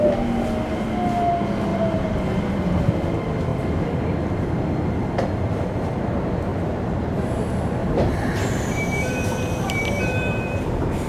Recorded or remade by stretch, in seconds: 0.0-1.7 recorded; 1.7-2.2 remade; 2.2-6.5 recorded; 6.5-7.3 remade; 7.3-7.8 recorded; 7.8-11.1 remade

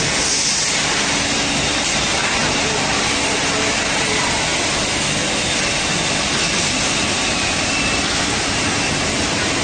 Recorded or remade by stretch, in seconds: 0.0-9.6 recorded

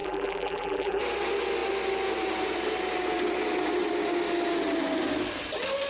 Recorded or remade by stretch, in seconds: 0.0-1.0 remade; 1.0-5.9 recorded

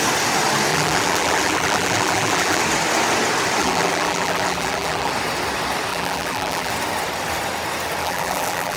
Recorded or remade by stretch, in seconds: 0.0-0.7 recorded; 0.7-2.6 remade; 2.6-3.6 recorded; 3.6-5.1 remade; 5.1-5.9 recorded; 5.9-6.7 remade; 6.7-8.0 recorded; 8.0-8.8 remade

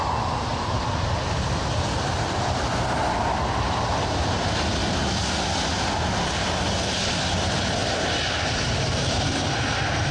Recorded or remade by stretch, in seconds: 0.0-7.8 recorded; 7.8-10.1 remade

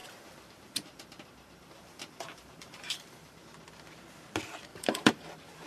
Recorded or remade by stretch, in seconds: 0.0-3.4 remade; 3.4-4.7 recorded; 4.7-5.7 remade

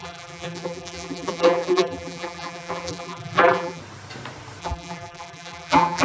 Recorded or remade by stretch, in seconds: 0.0-3.8 remade; 3.8-4.6 recorded; 4.6-6.0 remade

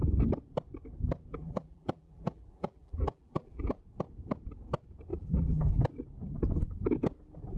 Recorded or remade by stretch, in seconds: 0.0-1.3 recorded; 1.3-3.8 remade; 3.8-5.1 recorded; 5.1-5.7 remade; 5.7-7.6 recorded